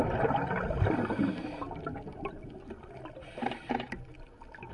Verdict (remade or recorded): recorded